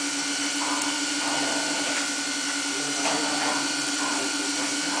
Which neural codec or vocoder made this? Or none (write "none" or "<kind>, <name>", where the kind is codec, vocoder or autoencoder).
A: none